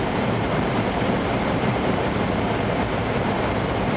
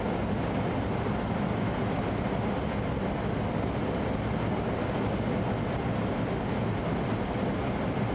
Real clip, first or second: second